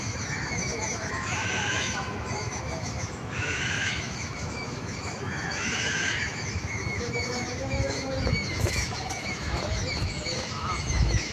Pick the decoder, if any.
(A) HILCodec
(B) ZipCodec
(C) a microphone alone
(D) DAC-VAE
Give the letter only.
D